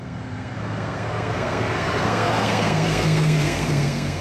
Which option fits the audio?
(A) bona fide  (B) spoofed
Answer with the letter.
B